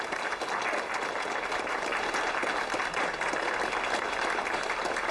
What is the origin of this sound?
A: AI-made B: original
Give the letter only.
B